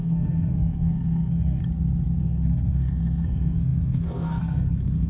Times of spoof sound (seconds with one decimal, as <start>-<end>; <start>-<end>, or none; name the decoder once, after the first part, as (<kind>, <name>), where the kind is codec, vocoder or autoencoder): 0.0-1.6 (codec, SNAC); 2.2-5.1